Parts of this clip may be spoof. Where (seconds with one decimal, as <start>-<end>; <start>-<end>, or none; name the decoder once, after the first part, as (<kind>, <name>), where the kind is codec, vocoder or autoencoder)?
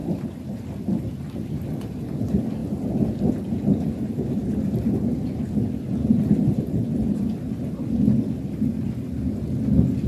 0.0-1.0 (vocoder, BigVGAN v2); 2.6-3.3